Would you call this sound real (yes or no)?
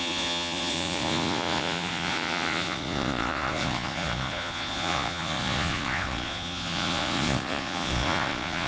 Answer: no